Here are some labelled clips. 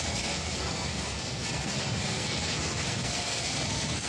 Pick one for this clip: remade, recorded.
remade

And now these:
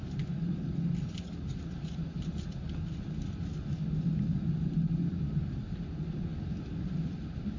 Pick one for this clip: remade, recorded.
recorded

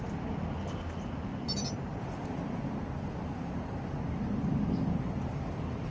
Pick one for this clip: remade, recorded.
recorded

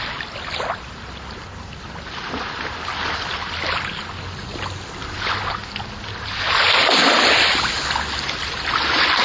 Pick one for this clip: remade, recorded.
recorded